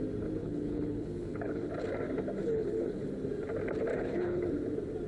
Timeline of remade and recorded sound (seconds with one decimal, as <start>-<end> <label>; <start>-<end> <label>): 0.0-0.4 recorded; 0.4-1.7 remade; 1.7-2.4 recorded; 2.4-3.1 remade; 3.1-3.9 recorded; 3.9-4.5 remade; 4.5-5.1 recorded